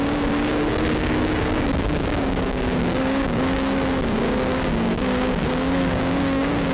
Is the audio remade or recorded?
remade